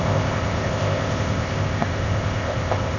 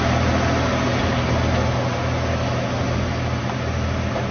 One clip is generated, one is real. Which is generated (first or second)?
first